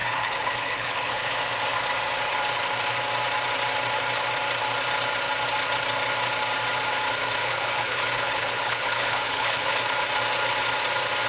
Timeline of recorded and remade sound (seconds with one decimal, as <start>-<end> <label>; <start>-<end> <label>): 0.0-1.3 remade; 1.3-7.4 recorded; 7.4-9.8 remade; 9.8-11.3 recorded